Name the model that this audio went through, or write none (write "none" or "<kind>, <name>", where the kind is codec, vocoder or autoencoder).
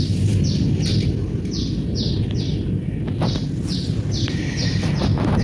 none